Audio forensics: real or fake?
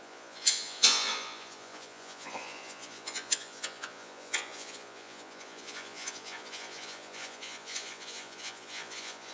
fake